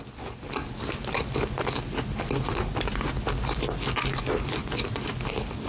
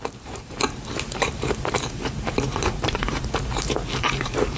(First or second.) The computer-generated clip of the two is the second